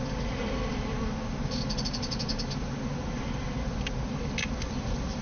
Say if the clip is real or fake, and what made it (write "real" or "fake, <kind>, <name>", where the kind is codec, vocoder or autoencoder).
real